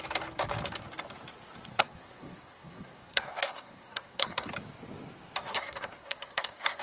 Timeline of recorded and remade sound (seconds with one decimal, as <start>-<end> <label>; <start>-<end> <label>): 0.0-1.7 recorded; 1.7-4.5 remade; 4.5-5.4 recorded; 5.4-6.8 remade